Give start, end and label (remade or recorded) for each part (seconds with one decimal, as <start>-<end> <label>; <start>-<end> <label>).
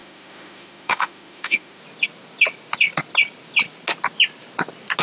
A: 0.0-1.8 remade; 1.8-5.0 recorded